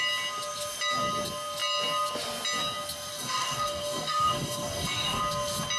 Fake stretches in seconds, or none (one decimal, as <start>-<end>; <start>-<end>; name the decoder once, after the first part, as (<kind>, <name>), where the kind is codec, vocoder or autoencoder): 3.1-5.2 (codec, DAC)